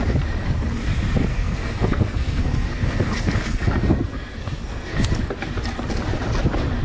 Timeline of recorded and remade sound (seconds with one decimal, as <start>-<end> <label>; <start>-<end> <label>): 0.0-1.3 recorded; 1.3-5.1 remade; 5.1-6.8 recorded